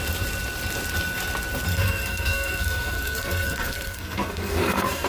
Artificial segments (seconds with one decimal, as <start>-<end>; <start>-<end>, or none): 1.7-5.1